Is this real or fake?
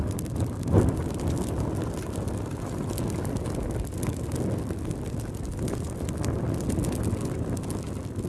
real